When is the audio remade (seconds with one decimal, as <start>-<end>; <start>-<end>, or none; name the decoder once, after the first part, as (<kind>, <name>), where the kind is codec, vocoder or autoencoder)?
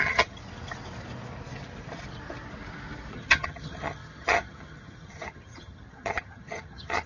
0.0-0.4 (vocoder, HiFi-GAN); 3.1-7.1